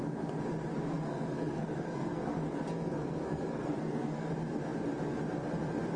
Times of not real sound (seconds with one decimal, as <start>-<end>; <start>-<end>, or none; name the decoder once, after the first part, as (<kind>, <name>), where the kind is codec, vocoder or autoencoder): 0.7-4.3 (codec, SNAC)